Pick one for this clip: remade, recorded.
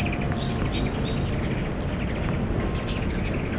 recorded